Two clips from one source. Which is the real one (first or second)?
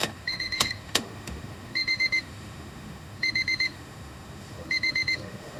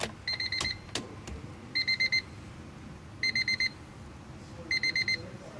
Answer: second